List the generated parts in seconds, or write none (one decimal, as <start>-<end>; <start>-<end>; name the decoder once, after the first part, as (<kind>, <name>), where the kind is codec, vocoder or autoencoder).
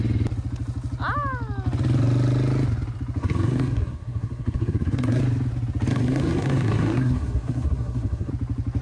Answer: 3.2-5.2 (codec, SNAC); 5.9-8.3